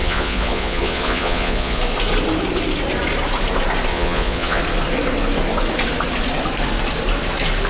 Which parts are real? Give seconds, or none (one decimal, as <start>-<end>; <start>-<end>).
1.8-3.9; 4.6-7.7